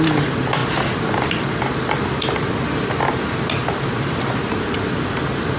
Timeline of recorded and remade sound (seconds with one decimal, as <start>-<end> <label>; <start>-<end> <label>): 0.0-5.6 recorded